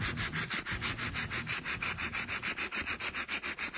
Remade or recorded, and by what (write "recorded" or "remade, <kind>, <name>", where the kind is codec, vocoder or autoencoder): recorded